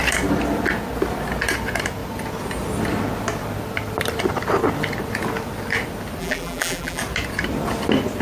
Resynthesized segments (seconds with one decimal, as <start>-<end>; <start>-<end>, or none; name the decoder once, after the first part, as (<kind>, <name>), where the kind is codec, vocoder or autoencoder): 6.2-7.0 (vocoder, BigVGAN v2)